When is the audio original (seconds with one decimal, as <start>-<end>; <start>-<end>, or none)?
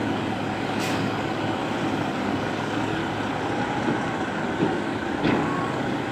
1.6-2.1; 3.0-4.3